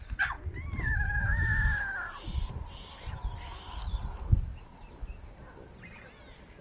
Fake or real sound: real